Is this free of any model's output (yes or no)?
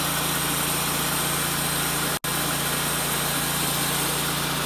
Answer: yes